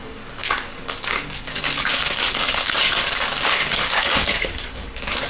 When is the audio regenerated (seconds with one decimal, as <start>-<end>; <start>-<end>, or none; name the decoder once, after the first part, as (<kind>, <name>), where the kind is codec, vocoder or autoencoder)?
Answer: 0.0-5.3 (codec, DAC)